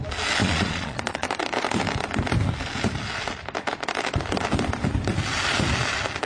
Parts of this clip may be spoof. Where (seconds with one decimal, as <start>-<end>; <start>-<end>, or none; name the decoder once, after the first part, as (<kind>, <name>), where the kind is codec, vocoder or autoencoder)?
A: 0.4-1.3 (vocoder, Vocos)